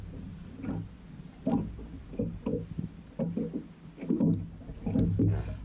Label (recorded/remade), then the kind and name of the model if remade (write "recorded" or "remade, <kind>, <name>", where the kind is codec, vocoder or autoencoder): recorded